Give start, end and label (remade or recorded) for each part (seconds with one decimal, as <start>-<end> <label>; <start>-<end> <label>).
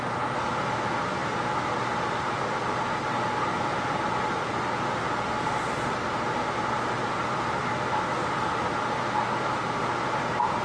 0.0-10.6 recorded